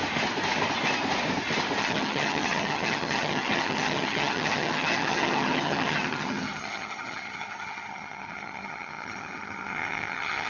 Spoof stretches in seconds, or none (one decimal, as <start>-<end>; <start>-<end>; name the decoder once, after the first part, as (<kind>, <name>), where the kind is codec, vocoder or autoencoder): 1.8-10.5 (vocoder, HiFi-GAN)